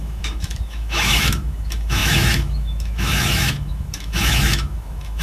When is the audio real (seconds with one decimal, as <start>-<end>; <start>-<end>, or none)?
none